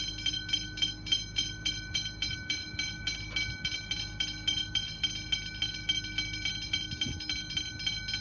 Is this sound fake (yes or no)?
no